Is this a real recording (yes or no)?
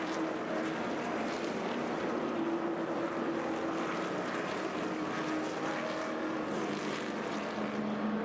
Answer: yes